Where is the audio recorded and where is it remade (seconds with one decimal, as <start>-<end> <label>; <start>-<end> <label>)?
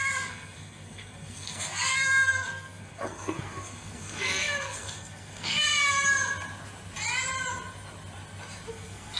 0.0-5.8 remade; 5.8-8.7 recorded; 8.7-9.2 remade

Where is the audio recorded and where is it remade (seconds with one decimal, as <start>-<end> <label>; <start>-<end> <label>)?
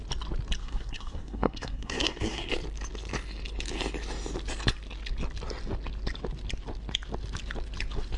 0.0-0.6 recorded; 0.6-2.5 remade; 2.5-8.2 recorded